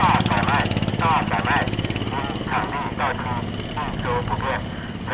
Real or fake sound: real